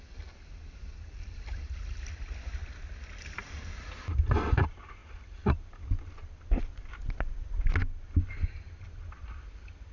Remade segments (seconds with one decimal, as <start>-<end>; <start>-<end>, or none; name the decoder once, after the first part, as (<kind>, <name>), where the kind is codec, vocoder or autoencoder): none